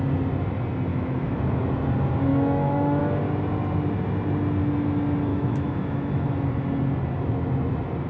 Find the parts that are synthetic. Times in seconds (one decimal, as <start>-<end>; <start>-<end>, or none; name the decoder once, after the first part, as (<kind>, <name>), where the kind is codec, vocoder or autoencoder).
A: 0.9-1.4 (autoencoder, DAC-VAE); 2.3-3.0; 5.3-6.2